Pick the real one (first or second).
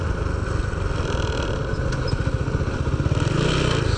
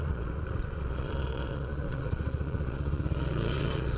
first